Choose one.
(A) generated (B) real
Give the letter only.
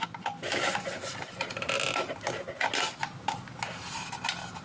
B